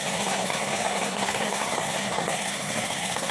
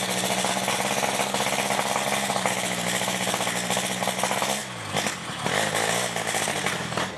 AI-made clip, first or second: first